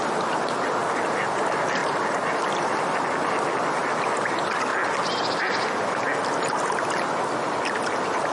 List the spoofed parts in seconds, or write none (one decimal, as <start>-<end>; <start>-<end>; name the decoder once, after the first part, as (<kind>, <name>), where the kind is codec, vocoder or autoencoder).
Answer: none